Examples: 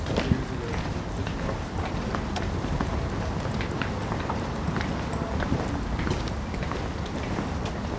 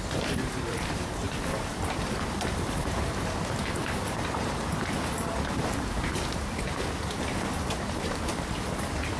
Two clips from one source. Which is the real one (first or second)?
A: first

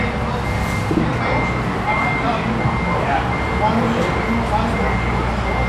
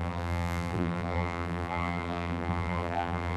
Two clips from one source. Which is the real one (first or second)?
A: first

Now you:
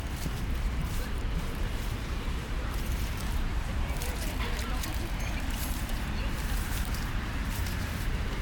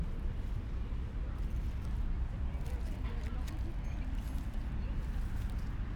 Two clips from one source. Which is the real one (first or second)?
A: second